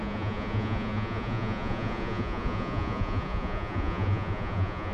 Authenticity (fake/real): fake